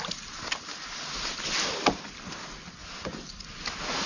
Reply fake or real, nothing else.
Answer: real